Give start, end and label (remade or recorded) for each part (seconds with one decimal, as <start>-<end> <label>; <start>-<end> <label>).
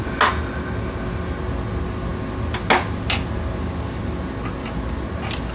0.0-5.5 recorded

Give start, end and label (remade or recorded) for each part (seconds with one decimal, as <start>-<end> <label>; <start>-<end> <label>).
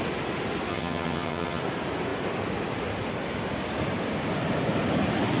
0.0-0.7 recorded; 0.7-1.6 remade; 1.6-5.4 recorded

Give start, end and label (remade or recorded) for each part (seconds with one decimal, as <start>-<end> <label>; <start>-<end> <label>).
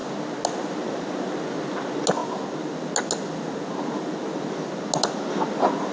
0.0-5.9 recorded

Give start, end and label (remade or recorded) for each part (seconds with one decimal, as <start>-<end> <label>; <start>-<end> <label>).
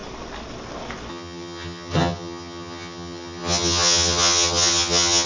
0.0-1.1 recorded; 1.1-5.3 remade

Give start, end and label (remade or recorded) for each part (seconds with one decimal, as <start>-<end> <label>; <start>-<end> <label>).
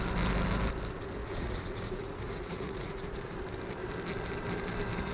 0.0-1.2 recorded; 1.2-3.2 remade; 3.2-5.1 recorded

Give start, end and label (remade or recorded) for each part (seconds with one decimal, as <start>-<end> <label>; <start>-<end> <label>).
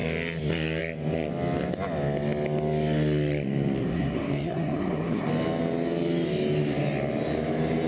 0.0-3.8 recorded; 3.8-5.3 remade; 5.3-7.9 recorded